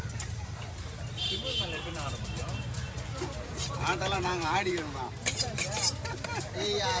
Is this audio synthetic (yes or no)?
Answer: yes